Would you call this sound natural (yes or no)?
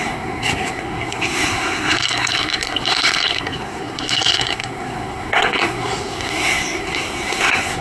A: no